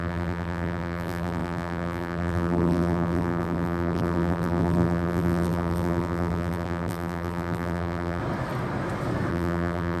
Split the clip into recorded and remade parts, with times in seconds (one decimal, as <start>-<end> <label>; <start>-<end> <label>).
0.0-8.2 remade; 8.2-9.3 recorded; 9.3-10.0 remade